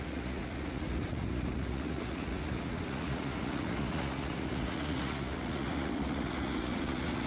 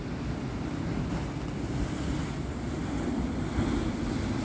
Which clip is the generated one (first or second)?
first